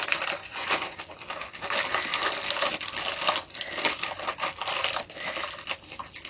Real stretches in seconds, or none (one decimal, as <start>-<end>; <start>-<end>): 0.0-0.4; 1.0-6.3